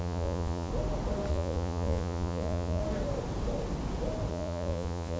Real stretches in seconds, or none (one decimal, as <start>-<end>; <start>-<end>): 0.7-1.3; 2.8-4.3